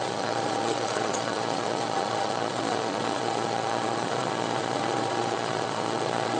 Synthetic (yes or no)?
yes